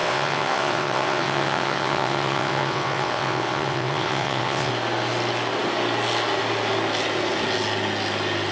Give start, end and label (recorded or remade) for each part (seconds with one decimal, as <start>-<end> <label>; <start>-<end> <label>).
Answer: 0.0-4.7 remade; 4.7-8.5 recorded